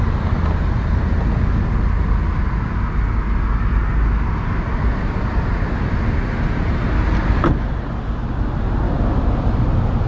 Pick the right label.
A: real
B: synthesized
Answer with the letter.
A